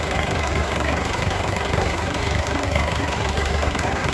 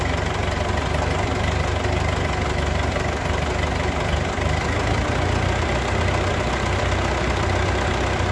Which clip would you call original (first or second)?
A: second